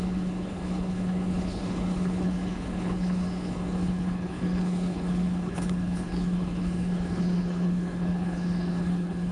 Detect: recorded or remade remade